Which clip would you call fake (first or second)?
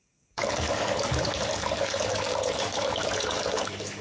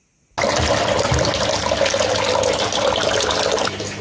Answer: first